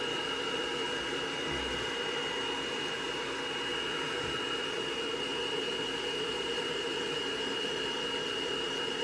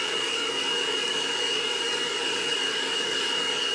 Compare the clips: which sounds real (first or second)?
first